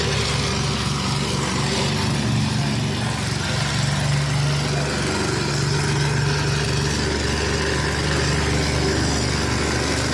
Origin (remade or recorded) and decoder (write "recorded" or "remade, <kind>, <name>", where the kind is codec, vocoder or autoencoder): recorded